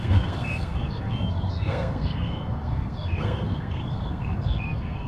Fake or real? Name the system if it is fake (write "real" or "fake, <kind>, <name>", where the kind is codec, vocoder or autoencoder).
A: fake, codec, SNAC